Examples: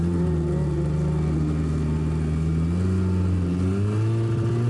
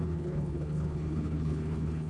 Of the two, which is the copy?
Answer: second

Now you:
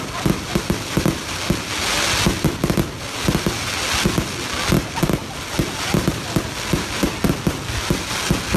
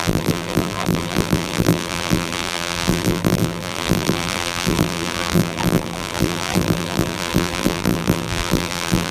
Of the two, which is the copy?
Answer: second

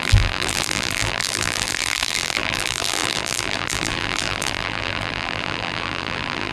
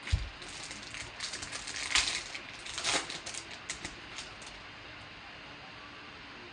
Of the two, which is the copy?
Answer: first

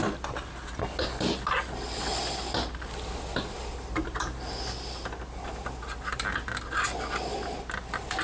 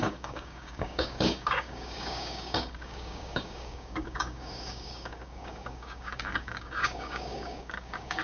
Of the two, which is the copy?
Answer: second